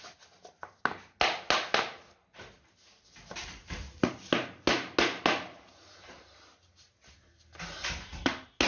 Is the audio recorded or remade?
recorded